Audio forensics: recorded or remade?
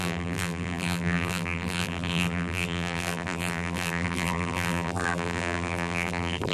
remade